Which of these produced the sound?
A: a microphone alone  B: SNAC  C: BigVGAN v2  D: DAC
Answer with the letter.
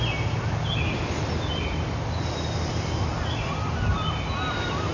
A